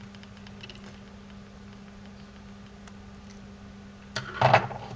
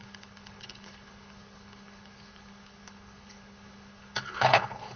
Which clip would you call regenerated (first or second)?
second